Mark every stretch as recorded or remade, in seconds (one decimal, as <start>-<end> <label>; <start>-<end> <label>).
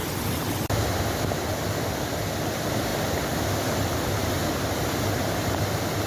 0.0-6.1 recorded